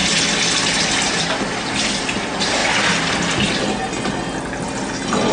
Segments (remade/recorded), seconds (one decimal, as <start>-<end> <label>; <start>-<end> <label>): 0.0-0.9 remade; 0.9-5.3 recorded